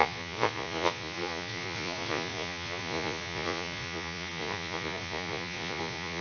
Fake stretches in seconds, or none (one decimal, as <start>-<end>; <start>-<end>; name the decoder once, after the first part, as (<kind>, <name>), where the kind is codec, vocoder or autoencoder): 0.0-6.2 (vocoder, Vocos)